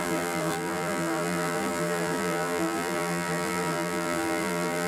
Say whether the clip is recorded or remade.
remade